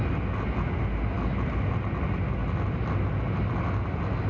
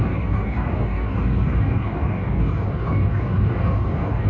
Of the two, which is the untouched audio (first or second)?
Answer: first